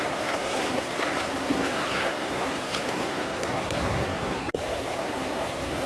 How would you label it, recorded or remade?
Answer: remade